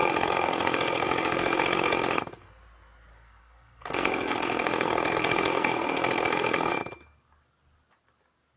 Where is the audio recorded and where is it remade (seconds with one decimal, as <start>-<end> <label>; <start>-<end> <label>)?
0.0-2.2 remade; 2.2-3.1 recorded; 3.1-6.7 remade; 6.7-8.6 recorded